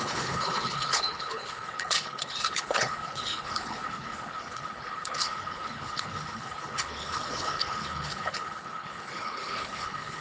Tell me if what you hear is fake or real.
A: fake